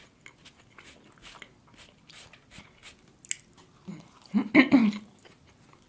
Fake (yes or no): no